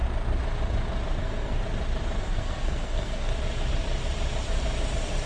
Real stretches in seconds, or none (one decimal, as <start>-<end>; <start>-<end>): 0.0-1.2; 1.6-2.2; 3.3-5.3